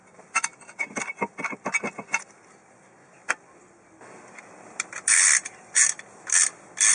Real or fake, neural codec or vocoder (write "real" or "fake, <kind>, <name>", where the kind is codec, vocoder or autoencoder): real